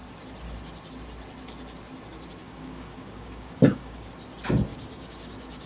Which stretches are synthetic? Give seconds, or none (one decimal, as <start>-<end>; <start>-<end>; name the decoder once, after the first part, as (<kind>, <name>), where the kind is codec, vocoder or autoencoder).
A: 2.4-4.1 (codec, DAC); 4.7-5.7